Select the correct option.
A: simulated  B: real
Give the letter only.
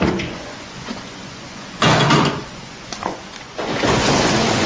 A